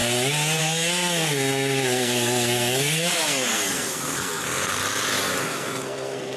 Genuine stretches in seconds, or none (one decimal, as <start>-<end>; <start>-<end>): 0.0-0.6; 4.8-5.4